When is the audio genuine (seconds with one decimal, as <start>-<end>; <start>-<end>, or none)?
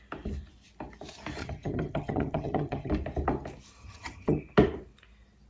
0.0-1.4; 2.9-3.8; 4.4-5.5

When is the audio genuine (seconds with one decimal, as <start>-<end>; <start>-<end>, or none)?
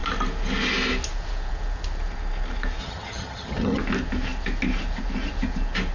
0.0-2.8; 3.8-5.9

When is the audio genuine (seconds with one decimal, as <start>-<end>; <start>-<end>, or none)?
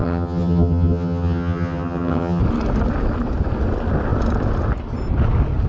2.4-5.7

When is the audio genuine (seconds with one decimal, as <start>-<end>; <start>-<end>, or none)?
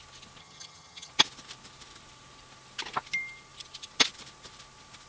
0.0-0.4; 1.1-5.1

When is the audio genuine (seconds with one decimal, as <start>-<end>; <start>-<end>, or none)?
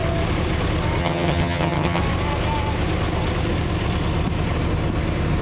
0.0-1.0; 2.0-5.4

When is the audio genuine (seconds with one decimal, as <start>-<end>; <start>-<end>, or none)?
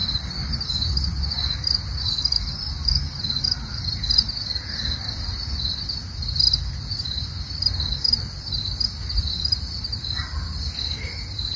0.0-11.6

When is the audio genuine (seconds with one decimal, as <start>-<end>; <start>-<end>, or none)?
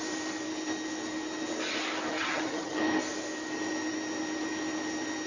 0.0-2.1; 2.8-5.3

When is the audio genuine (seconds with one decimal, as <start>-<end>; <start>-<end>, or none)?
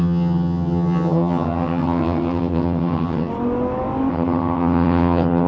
3.3-4.1